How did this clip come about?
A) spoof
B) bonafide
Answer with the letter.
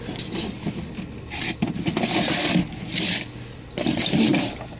B